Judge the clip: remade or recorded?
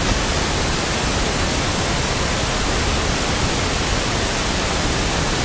recorded